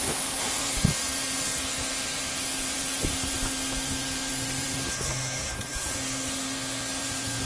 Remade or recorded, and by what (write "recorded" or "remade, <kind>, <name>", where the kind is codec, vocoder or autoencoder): recorded